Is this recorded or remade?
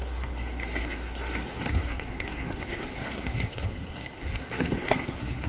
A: remade